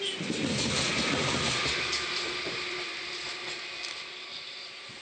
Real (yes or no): yes